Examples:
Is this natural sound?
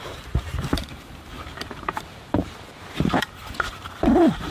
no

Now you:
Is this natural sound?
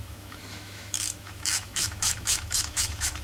no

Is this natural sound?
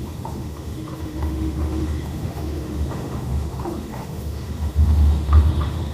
no